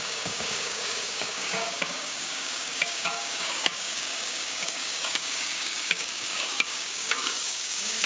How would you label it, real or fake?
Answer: fake